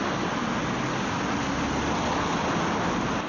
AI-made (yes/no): no